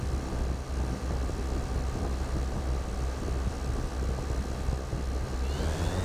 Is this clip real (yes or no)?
yes